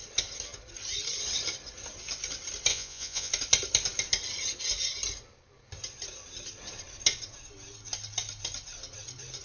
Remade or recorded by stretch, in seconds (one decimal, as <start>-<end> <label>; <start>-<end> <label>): 0.0-2.7 recorded; 2.7-3.3 remade; 3.3-9.4 recorded